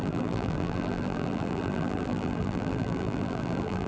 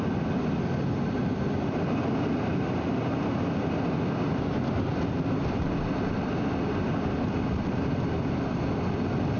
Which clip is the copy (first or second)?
first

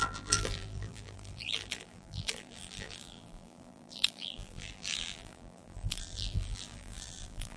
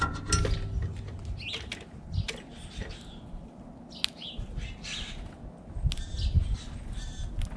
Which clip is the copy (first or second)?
first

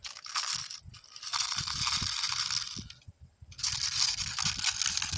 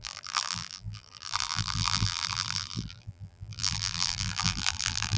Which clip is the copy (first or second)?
second